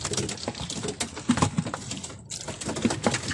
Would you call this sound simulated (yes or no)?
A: no